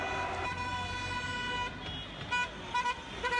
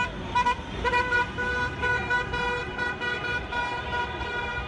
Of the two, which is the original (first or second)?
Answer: first